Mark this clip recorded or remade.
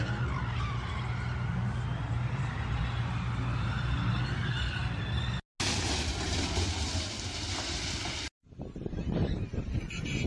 recorded